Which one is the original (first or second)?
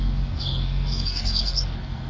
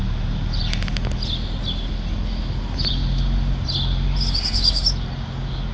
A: second